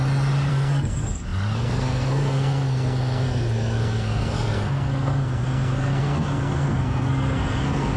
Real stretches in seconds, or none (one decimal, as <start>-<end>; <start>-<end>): 0.0-0.5